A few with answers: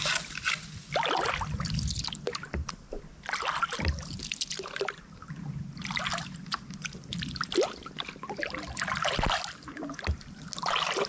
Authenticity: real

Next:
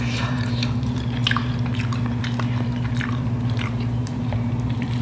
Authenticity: fake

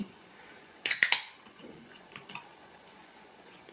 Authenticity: fake